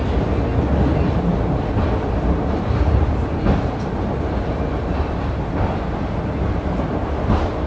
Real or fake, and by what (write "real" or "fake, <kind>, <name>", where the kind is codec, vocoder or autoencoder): real